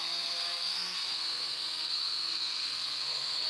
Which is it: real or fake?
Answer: fake